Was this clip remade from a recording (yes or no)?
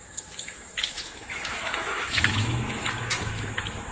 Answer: yes